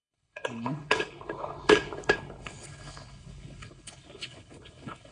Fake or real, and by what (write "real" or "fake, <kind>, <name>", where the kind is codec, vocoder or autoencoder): fake, codec, HILCodec